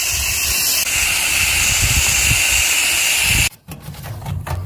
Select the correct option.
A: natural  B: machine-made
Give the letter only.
A